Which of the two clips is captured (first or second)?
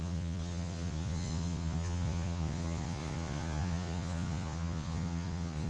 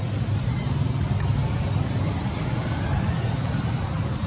second